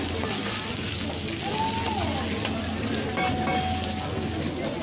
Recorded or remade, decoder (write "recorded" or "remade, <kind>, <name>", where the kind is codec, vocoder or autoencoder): recorded